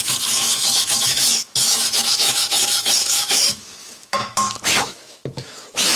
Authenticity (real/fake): fake